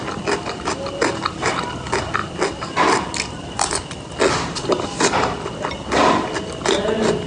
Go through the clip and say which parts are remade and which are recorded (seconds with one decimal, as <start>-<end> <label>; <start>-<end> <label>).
0.0-7.3 recorded